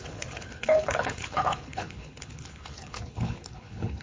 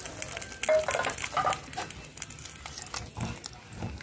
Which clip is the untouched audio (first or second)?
second